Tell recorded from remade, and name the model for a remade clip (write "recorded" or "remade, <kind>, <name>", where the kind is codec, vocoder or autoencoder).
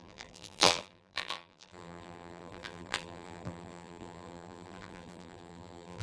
remade, vocoder, BigVGAN v2